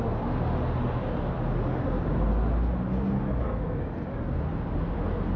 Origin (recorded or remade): recorded